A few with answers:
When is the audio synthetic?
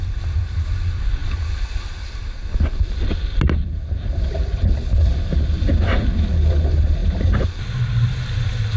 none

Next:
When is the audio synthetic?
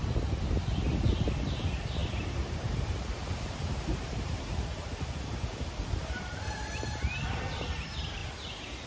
1.1-8.2 (vocoder, BigVGAN v2)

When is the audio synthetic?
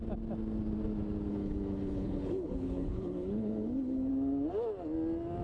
1.3-4.1 (codec, HILCodec)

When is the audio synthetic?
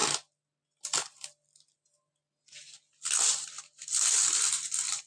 none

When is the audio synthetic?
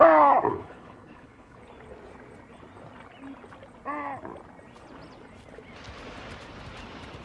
0.5-1.6 (codec, HILCodec)